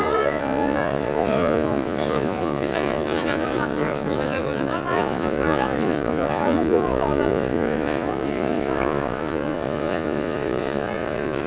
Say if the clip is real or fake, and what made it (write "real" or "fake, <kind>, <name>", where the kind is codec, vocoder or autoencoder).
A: fake, vocoder, Vocos